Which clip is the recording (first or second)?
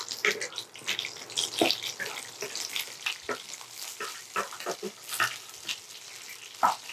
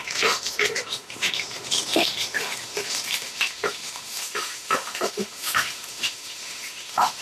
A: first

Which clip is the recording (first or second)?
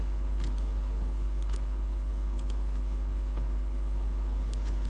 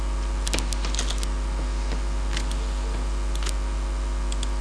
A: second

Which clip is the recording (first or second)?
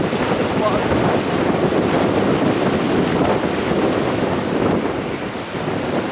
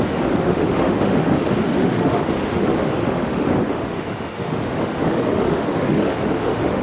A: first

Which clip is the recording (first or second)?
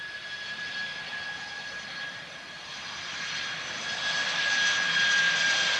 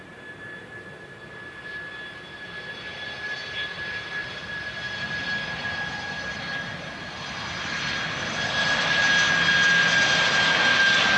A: second